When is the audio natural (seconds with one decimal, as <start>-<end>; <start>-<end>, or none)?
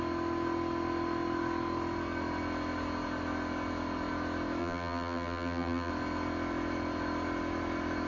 0.0-4.6; 5.9-8.1